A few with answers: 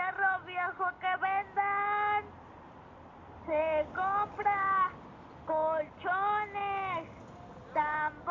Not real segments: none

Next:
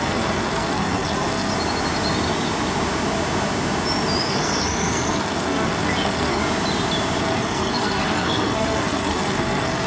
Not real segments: 0.0-1.5; 4.3-6.4; 7.2-9.9

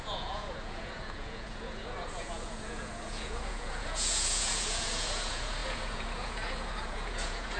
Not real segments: 0.0-7.6